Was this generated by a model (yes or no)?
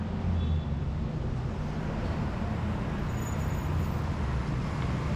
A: no